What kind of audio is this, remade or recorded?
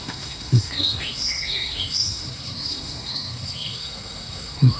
remade